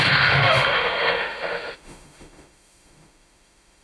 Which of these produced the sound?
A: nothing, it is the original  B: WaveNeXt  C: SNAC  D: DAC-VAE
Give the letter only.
D